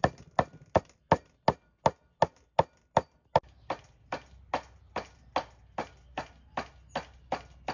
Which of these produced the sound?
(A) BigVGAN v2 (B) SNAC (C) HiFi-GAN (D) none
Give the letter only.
D